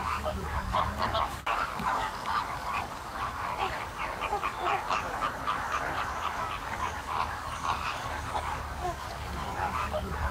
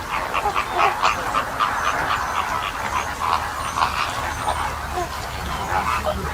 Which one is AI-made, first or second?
first